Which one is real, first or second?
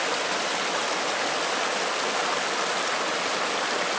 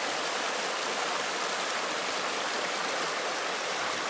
first